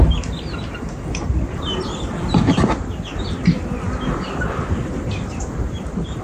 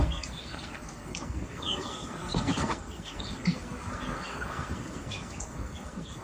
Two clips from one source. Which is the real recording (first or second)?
first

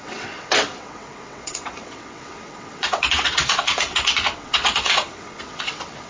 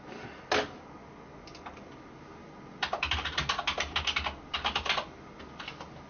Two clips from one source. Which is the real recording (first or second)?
second